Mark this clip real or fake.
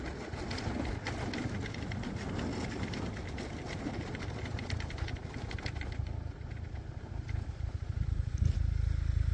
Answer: real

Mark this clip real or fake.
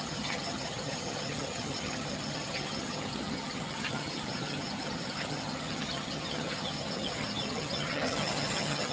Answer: fake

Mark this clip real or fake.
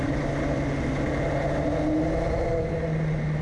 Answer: real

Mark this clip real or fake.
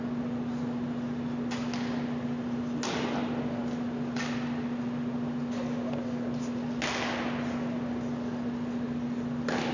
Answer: real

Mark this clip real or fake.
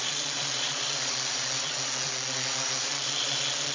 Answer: fake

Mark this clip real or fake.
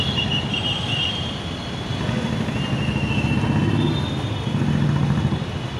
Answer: real